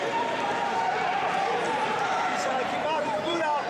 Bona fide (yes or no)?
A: no